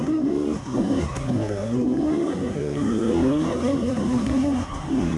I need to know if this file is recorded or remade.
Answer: remade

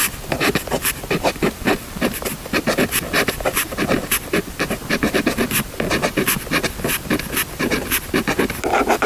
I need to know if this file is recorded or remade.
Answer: remade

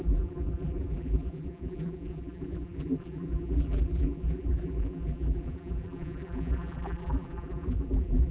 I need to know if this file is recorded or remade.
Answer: remade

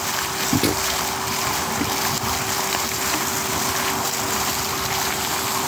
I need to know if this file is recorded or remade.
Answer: recorded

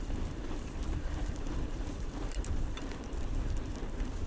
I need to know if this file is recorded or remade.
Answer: remade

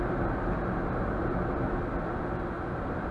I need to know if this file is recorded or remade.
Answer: recorded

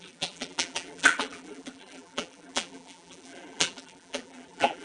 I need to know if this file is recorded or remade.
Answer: remade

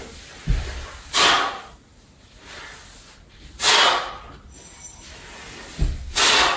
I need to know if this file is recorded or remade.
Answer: recorded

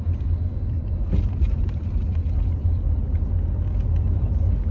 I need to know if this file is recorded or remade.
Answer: recorded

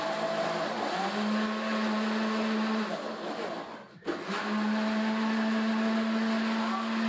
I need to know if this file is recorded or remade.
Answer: recorded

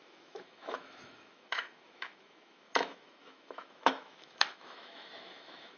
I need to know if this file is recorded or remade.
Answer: remade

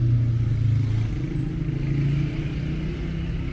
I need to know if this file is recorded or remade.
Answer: recorded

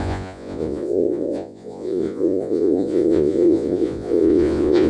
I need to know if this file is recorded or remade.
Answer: remade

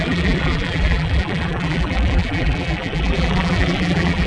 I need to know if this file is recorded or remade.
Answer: remade